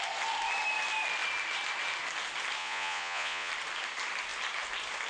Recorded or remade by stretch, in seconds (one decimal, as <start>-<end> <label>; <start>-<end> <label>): 0.0-2.6 recorded; 2.6-3.5 remade; 3.5-5.1 recorded